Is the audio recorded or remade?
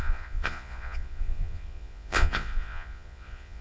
remade